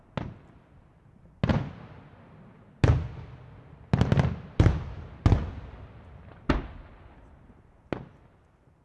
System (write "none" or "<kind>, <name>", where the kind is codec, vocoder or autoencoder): none